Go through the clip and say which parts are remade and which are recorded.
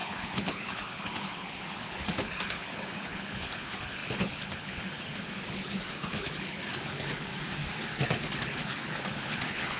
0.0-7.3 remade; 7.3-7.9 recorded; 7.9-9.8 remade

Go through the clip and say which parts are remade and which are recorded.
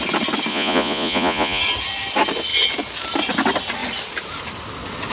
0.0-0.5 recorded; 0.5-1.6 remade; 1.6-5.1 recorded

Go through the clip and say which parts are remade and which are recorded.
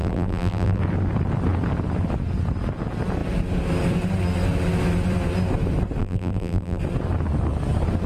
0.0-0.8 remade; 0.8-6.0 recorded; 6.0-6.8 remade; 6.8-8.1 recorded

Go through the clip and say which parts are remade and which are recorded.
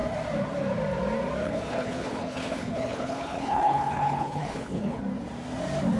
0.0-1.4 recorded; 1.4-5.0 remade; 5.0-6.0 recorded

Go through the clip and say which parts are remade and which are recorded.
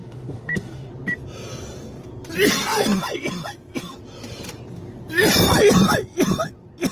0.0-0.9 remade; 0.9-6.9 recorded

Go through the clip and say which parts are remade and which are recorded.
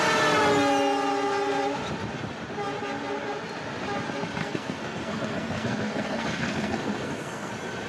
0.0-4.4 recorded; 4.4-7.5 remade; 7.5-7.9 recorded